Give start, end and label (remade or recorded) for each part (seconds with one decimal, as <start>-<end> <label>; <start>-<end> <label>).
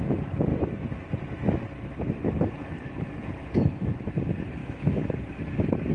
0.0-4.6 recorded; 4.6-5.2 remade; 5.2-5.9 recorded